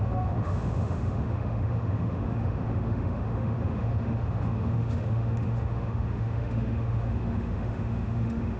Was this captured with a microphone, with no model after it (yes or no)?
no